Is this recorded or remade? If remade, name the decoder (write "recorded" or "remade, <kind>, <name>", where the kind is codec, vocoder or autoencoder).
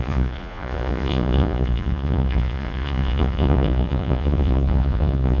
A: remade, vocoder, Vocos